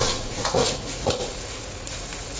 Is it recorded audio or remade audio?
remade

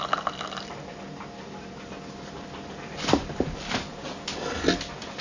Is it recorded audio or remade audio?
recorded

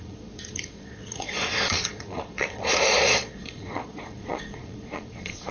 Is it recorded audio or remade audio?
remade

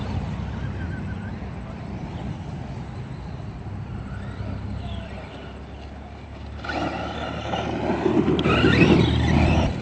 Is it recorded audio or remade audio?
remade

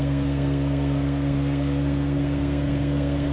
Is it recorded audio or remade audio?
remade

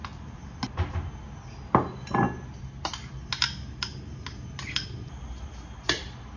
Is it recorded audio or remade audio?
recorded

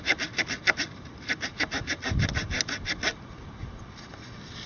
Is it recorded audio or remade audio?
recorded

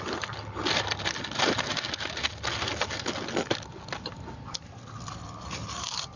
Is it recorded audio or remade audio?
recorded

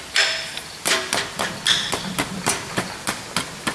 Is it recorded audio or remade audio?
recorded